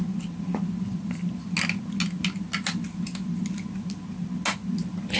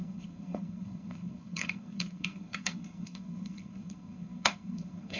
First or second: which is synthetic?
second